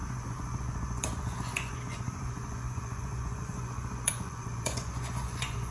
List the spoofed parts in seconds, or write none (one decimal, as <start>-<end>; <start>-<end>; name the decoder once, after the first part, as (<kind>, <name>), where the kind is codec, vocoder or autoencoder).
0.0-5.7 (vocoder, Vocos)